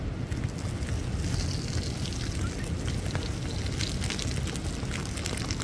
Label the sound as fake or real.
real